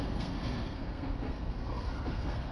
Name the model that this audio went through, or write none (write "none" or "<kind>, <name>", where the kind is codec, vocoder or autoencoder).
codec, SNAC